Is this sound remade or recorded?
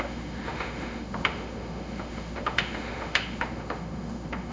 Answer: remade